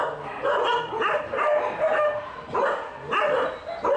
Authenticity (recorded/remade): recorded